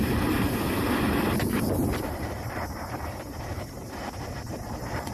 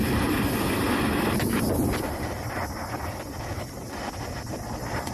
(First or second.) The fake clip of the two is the first